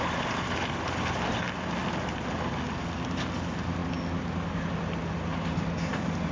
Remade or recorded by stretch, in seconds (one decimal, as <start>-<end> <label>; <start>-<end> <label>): 0.0-6.3 recorded